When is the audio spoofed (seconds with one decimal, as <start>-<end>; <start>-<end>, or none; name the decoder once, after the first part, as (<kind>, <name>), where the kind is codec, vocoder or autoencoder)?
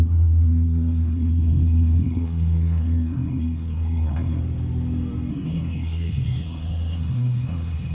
0.0-4.4 (codec, SNAC); 5.3-7.9